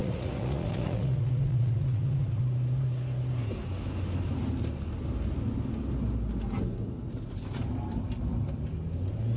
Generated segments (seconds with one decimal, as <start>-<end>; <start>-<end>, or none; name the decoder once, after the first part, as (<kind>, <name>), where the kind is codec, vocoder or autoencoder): 0.0-2.4 (vocoder, Vocos)